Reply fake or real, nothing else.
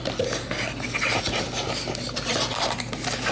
real